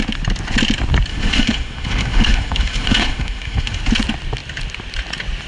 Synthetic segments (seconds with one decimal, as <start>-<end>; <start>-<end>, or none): 1.1-3.8